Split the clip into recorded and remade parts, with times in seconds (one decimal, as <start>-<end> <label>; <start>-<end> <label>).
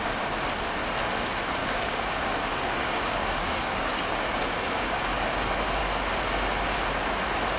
0.0-1.6 recorded; 1.6-4.9 remade; 4.9-7.6 recorded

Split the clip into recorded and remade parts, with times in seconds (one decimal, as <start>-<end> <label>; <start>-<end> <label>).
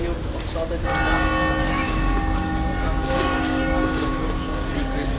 0.0-1.6 recorded; 1.6-4.7 remade; 4.7-5.2 recorded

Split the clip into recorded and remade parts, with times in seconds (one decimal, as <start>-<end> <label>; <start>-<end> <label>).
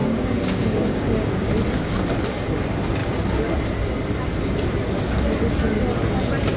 0.0-1.5 remade; 1.5-6.6 recorded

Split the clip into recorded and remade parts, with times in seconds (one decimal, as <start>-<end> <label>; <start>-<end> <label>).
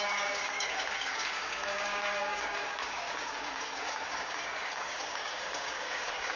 0.0-6.4 remade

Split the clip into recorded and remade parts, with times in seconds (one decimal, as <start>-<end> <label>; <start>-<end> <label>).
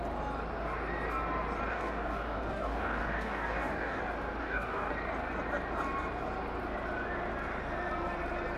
0.0-1.7 recorded; 1.7-4.0 remade; 4.0-4.4 recorded; 4.4-4.9 remade; 4.9-8.6 recorded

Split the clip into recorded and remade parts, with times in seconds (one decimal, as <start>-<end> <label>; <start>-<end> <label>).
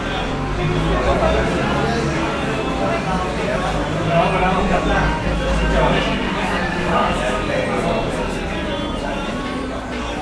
0.0-6.2 recorded; 6.2-7.5 remade; 7.5-10.2 recorded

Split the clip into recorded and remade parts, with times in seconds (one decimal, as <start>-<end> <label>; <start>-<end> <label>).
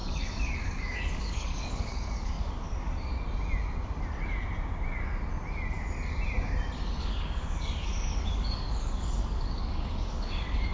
0.0-3.1 remade; 3.1-7.0 recorded; 7.0-10.7 remade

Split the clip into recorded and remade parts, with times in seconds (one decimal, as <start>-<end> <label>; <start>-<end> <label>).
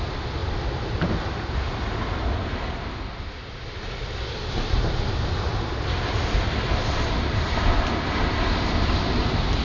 0.0-9.6 recorded